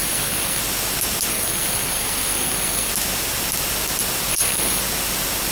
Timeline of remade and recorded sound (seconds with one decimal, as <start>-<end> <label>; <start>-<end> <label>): 0.0-0.6 remade; 0.6-1.3 recorded; 1.3-2.9 remade; 2.9-4.3 recorded; 4.3-4.8 remade; 4.8-5.5 recorded